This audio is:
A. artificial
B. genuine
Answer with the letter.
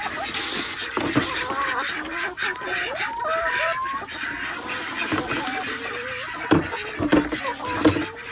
B